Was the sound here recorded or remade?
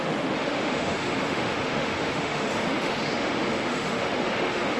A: remade